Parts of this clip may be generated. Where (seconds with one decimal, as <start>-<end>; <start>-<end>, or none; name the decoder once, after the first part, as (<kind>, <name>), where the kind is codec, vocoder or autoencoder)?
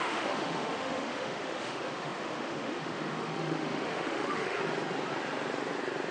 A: 0.0-4.6 (autoencoder, DAC-VAE)